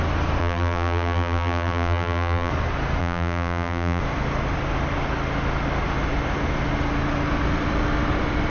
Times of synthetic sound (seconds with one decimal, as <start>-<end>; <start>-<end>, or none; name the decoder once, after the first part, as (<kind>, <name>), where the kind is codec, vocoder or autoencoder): 0.4-2.5 (vocoder, BigVGAN v2); 3.0-4.0